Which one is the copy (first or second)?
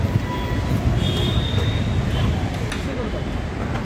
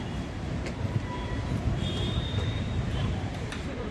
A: second